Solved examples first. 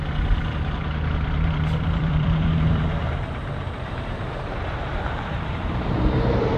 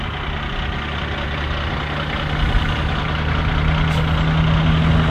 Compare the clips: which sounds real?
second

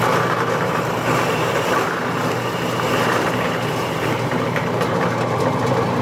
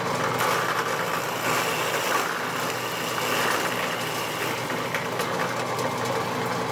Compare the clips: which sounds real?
second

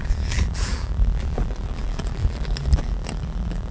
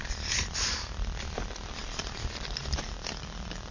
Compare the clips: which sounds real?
second